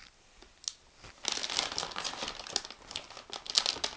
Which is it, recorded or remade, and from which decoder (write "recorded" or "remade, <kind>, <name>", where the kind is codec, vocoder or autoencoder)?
recorded